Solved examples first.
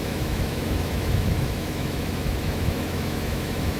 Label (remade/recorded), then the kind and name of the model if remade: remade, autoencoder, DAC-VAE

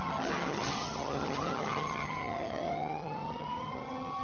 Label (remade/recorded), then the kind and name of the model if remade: remade, vocoder, HiFi-GAN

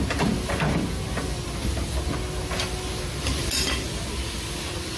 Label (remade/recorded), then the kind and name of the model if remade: recorded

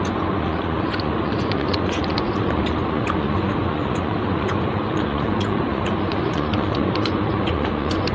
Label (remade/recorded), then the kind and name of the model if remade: remade, vocoder, Vocos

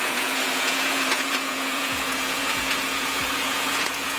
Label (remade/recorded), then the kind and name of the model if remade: remade, vocoder, Vocos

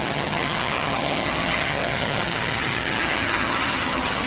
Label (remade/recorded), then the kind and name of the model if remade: remade, vocoder, HiFi-GAN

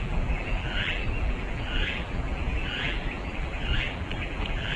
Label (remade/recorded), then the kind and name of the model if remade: remade, vocoder, BigVGAN v2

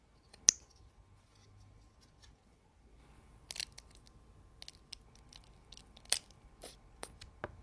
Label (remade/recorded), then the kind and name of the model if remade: recorded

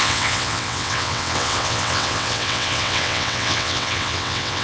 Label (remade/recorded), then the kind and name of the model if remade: remade, vocoder, WaveNeXt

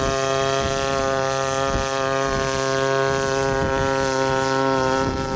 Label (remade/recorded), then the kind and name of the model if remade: recorded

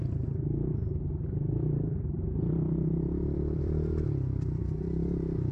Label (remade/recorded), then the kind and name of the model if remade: remade, vocoder, BigVGAN v2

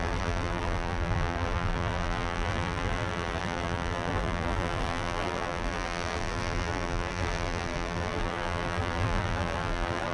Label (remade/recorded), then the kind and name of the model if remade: remade, vocoder, BigVGAN v2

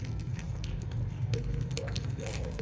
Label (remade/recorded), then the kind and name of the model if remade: remade, codec, SNAC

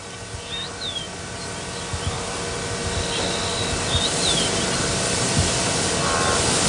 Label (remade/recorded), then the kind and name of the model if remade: recorded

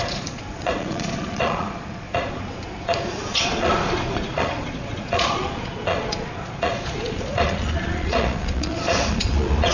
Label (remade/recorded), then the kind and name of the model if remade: remade, vocoder, Vocos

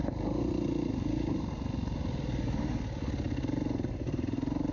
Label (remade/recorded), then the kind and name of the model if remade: recorded